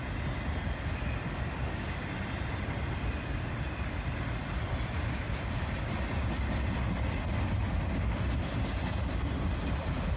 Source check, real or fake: real